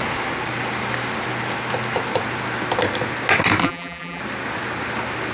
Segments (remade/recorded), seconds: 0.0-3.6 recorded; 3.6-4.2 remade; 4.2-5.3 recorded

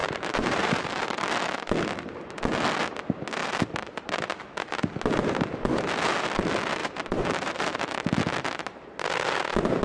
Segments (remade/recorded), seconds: 0.0-1.3 remade; 1.3-3.4 recorded; 3.4-4.1 remade; 4.1-6.8 recorded; 6.8-8.2 remade; 8.2-9.8 recorded

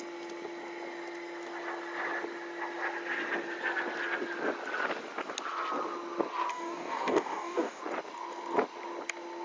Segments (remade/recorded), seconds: 0.0-6.5 recorded; 6.5-7.8 remade; 7.8-9.4 recorded

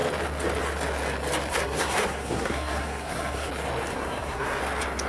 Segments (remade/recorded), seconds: 0.0-1.5 recorded; 1.5-3.5 remade; 3.5-3.9 recorded; 3.9-4.6 remade; 4.6-5.1 recorded

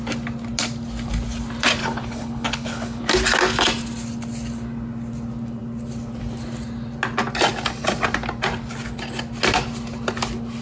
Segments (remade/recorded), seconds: 0.0-1.8 recorded; 1.8-3.0 remade; 3.0-10.6 recorded

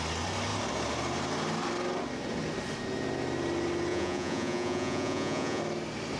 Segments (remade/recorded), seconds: 0.0-3.9 recorded; 3.9-5.6 remade; 5.6-6.2 recorded

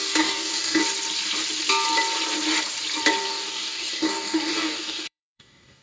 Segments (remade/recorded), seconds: 0.0-0.8 remade; 0.8-3.2 recorded; 3.2-5.8 remade